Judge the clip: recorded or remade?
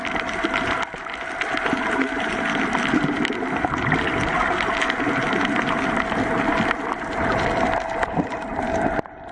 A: recorded